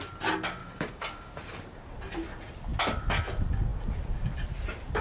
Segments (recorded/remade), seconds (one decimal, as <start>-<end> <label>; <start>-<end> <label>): 0.0-0.6 recorded; 0.6-1.3 remade; 1.3-5.0 recorded